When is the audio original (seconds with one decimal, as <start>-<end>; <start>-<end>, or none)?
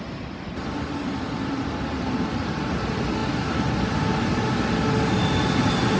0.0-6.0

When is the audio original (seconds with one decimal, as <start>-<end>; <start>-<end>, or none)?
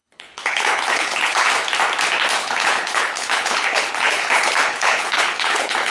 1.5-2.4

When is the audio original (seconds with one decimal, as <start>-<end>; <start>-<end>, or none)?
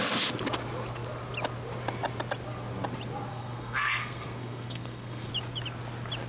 0.0-3.3; 5.3-6.3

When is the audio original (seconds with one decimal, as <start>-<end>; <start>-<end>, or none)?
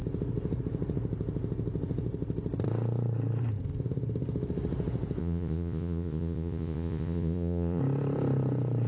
0.0-5.2; 7.8-8.9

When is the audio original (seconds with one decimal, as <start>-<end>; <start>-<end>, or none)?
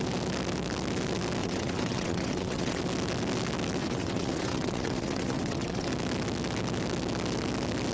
0.0-1.4; 2.8-3.8; 5.9-7.9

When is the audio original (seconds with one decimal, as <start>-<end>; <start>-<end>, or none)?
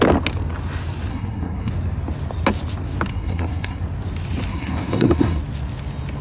0.0-1.1; 1.7-3.1; 3.8-4.5; 5.4-6.2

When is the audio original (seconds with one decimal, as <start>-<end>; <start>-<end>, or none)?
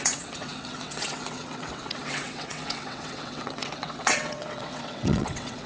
none